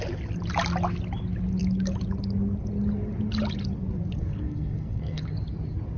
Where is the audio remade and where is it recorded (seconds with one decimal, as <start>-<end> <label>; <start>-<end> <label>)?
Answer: 0.0-4.2 recorded; 4.2-5.2 remade; 5.2-6.0 recorded